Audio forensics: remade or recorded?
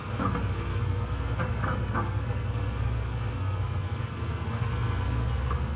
remade